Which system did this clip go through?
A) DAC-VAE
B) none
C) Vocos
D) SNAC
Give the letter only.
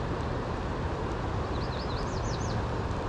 B